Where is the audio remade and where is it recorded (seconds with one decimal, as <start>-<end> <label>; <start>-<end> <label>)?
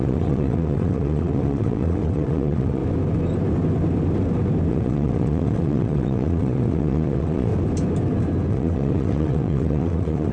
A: 0.0-2.8 remade; 2.8-4.7 recorded; 4.7-7.5 remade; 7.5-8.5 recorded; 8.5-10.3 remade